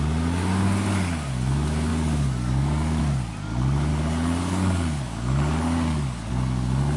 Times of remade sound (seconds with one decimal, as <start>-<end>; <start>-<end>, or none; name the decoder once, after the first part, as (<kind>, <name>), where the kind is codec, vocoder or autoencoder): 1.9-3.0 (codec, DAC); 3.9-6.3